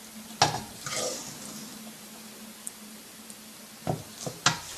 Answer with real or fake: real